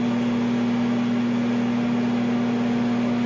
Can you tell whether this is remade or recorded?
recorded